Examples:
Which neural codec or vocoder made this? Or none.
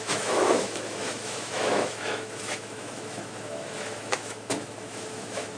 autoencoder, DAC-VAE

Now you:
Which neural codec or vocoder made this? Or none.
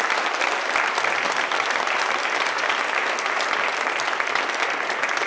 none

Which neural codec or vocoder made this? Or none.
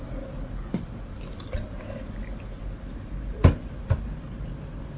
none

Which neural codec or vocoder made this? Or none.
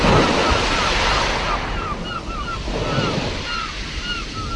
none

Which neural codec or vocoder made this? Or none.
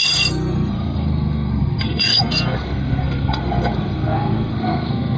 codec, SNAC